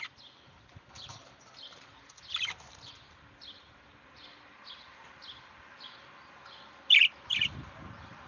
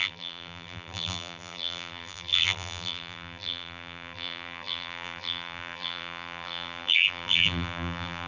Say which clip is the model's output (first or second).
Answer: second